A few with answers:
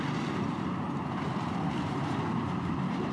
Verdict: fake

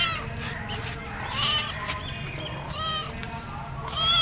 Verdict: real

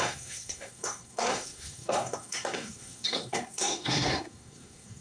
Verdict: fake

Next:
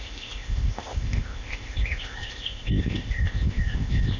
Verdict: fake